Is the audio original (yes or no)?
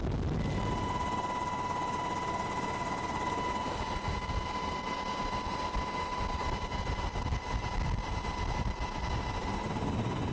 yes